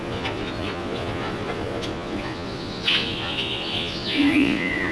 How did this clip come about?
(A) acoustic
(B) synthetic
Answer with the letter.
B